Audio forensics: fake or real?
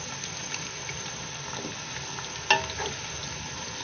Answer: real